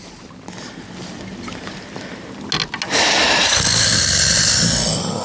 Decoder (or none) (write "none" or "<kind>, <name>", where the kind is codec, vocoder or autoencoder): none